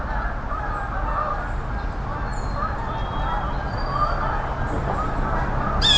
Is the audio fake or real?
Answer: real